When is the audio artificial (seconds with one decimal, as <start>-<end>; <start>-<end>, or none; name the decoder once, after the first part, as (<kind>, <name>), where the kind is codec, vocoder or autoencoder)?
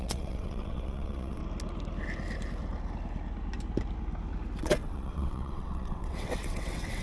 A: 0.0-1.4 (vocoder, WaveNeXt); 4.6-7.0